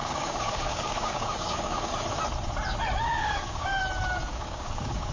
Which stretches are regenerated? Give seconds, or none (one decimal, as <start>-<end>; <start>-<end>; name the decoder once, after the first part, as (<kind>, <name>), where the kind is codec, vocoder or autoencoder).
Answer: 0.0-1.9 (codec, DAC); 3.1-3.8; 4.3-5.1